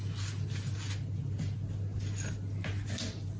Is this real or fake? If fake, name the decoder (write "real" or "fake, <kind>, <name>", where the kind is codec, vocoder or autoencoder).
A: real